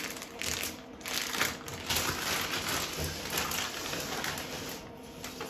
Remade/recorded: recorded